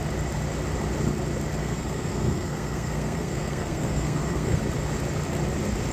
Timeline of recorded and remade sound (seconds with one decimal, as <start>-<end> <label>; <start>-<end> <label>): 0.0-1.6 recorded; 1.6-4.6 remade; 4.6-5.9 recorded